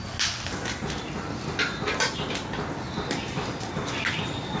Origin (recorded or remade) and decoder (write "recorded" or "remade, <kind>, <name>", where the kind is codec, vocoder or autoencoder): recorded